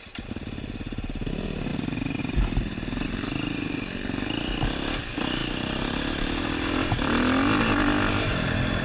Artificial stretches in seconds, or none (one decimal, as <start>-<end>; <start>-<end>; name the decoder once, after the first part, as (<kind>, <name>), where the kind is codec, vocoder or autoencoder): none